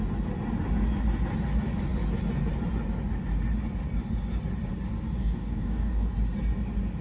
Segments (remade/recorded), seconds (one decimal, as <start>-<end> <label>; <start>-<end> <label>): 0.0-5.2 recorded; 5.2-6.1 remade; 6.1-7.0 recorded